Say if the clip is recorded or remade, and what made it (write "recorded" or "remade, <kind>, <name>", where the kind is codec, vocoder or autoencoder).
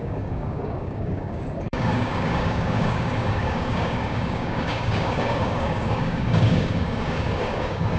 remade, codec, DAC